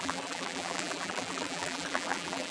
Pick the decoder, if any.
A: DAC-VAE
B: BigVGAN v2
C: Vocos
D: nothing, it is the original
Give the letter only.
B